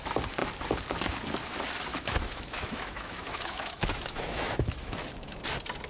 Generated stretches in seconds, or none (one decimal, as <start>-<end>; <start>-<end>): 1.9-5.4